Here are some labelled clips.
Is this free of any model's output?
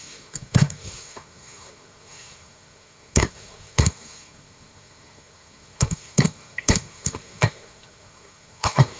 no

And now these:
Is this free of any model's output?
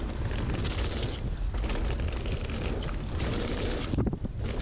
yes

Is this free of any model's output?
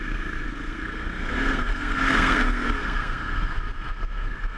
no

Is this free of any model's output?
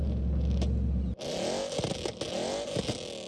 yes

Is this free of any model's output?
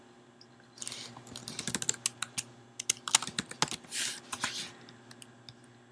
yes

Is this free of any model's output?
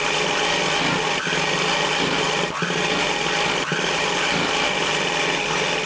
yes